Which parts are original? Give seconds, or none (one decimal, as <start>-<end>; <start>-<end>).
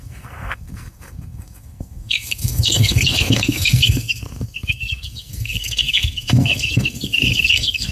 none